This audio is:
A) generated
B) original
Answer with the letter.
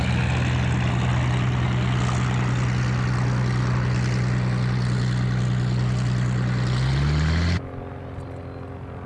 B